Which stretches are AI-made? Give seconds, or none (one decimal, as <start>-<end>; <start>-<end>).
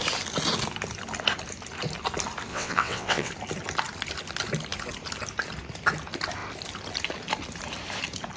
2.5-3.3